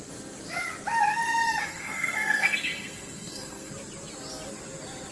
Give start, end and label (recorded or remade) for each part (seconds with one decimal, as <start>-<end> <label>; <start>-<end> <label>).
0.0-1.6 recorded; 1.6-3.7 remade; 3.7-5.1 recorded